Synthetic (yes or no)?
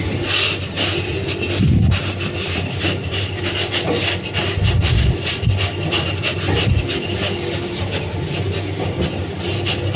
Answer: no